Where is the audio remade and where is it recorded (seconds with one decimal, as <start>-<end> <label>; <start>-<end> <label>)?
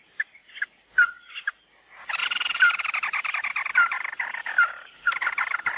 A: 0.0-5.8 recorded